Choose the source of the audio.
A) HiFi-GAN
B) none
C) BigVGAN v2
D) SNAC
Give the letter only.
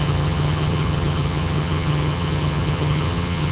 A